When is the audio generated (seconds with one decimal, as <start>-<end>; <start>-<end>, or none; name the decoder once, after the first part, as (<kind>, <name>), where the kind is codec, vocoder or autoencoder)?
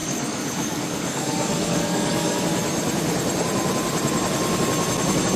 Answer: 0.0-2.4 (codec, DAC)